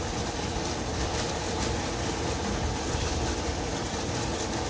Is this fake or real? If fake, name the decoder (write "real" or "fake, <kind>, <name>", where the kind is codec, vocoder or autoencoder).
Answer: real